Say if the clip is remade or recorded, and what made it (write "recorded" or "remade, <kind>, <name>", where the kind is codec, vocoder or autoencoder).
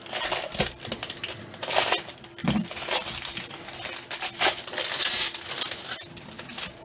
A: recorded